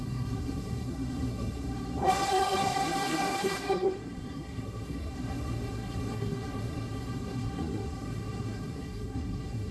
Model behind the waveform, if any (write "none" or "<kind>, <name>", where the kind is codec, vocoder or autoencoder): codec, SNAC